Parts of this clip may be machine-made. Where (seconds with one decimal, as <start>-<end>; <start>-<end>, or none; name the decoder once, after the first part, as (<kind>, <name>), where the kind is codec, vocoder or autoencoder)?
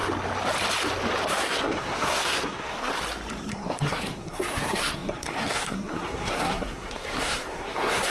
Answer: 1.3-2.9 (codec, SNAC); 3.5-8.1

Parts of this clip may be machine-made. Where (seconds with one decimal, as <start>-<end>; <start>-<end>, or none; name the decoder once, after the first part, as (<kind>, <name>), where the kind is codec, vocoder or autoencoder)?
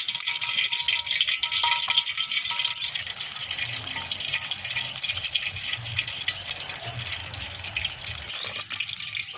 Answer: 7.2-8.0 (autoencoder, DAC-VAE)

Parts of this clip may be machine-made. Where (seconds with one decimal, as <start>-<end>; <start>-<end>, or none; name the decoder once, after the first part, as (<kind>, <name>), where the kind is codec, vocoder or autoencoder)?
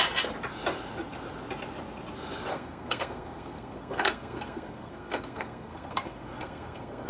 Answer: 2.5-7.1 (codec, SNAC)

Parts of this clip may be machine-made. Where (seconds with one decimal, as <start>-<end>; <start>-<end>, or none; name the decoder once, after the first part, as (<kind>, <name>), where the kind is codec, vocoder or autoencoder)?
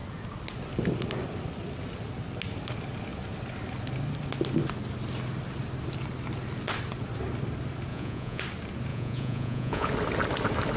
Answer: 7.9-8.4 (vocoder, Vocos); 8.9-9.9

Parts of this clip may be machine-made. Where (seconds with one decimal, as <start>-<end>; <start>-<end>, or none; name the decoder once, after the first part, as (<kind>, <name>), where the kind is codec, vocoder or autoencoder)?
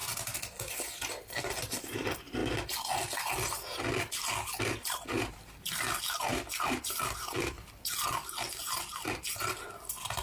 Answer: 0.7-2.4 (vocoder, BigVGAN v2); 4.6-10.2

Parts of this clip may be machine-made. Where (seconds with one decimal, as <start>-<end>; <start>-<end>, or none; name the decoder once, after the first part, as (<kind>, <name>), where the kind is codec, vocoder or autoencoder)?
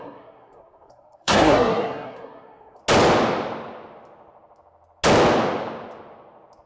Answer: 0.0-2.8 (codec, SNAC)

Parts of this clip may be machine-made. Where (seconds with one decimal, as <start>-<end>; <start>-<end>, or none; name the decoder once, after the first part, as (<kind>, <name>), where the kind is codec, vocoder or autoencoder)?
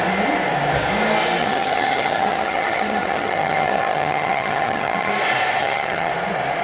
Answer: 1.4-5.1 (vocoder, HiFi-GAN); 5.6-6.1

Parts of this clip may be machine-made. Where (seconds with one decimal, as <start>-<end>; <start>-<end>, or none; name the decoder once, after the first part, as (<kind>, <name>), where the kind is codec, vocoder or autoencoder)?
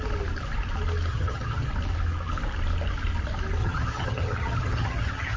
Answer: 1.1-1.7 (vocoder, HiFi-GAN); 3.6-5.4